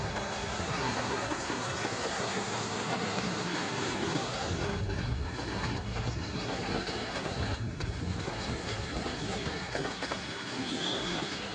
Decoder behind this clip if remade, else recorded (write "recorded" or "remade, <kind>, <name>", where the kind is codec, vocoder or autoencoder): remade, codec, SNAC